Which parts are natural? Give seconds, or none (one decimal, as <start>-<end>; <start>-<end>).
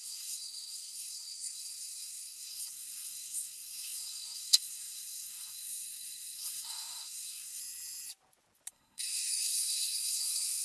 7.6-8.7